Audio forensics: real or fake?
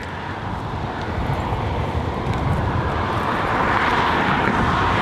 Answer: fake